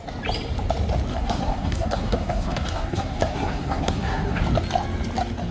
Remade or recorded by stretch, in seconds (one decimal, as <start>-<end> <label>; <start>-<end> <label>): 0.0-1.1 recorded; 1.1-4.4 remade; 4.4-5.5 recorded